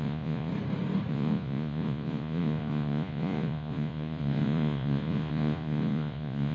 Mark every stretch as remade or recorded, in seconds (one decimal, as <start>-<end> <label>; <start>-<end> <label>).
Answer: 0.0-0.5 remade; 0.5-1.1 recorded; 1.1-6.5 remade